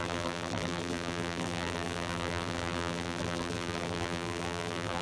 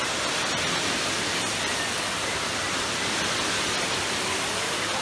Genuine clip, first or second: second